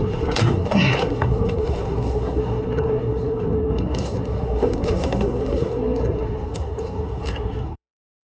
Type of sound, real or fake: fake